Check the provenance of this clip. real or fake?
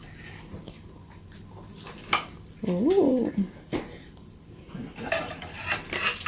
real